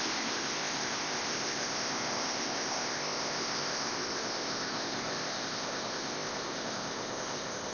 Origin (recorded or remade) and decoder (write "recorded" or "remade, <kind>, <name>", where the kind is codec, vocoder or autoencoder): remade, codec, ZipCodec